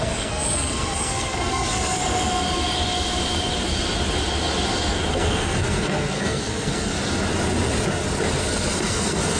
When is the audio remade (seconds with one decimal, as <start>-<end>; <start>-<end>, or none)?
0.0-2.0; 5.1-6.9; 8.4-9.4